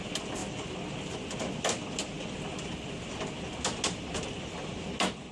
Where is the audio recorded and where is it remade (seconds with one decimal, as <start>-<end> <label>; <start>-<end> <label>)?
0.0-5.3 recorded